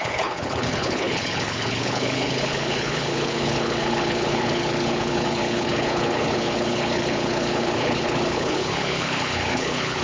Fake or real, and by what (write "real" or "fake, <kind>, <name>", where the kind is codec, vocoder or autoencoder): fake, codec, HILCodec